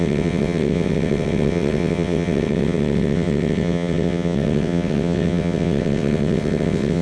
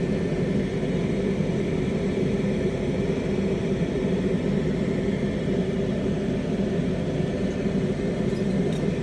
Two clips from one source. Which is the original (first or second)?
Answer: second